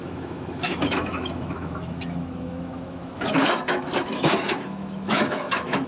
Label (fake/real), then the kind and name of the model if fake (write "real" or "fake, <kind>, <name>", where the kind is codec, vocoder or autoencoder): fake, autoencoder, DAC-VAE